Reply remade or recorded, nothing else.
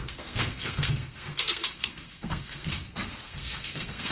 remade